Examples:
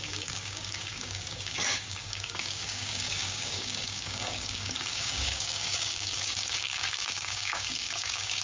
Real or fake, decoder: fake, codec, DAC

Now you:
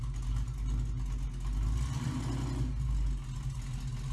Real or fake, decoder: real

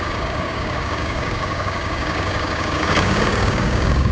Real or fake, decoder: fake, codec, DAC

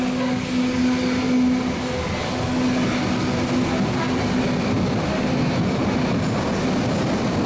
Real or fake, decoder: real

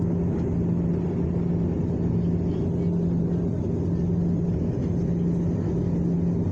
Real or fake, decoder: real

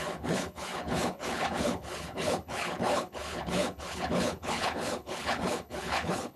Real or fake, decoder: fake, codec, HILCodec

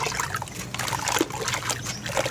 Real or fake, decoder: real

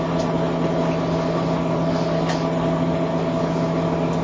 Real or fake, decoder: real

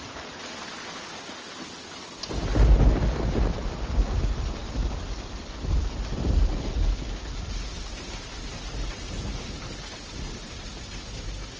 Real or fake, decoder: real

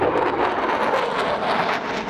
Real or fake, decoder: real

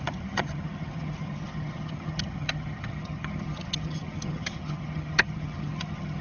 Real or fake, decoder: fake, vocoder, HiFi-GAN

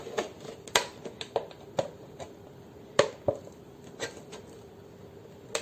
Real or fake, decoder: real